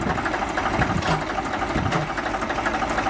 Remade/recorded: recorded